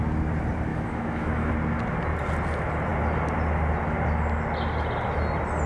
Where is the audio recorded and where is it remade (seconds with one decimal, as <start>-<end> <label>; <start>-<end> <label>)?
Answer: 0.0-0.7 recorded; 0.7-1.5 remade; 1.5-5.7 recorded